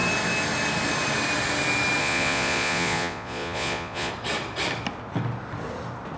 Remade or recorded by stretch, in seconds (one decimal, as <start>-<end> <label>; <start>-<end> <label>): 0.0-2.0 recorded; 2.0-4.1 remade; 4.1-6.2 recorded